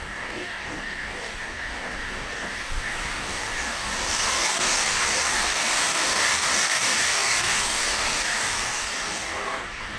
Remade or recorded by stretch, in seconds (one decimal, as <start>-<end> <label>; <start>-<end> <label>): 0.0-10.0 remade

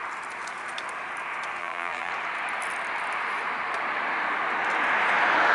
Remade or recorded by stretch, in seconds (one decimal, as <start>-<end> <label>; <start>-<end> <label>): 0.0-1.6 recorded; 1.6-2.1 remade; 2.1-5.5 recorded